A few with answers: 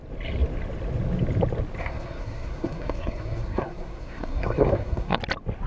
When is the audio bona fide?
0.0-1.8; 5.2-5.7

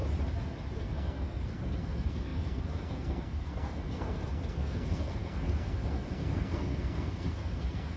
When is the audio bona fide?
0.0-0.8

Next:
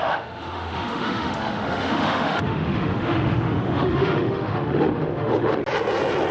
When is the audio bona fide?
5.6-6.3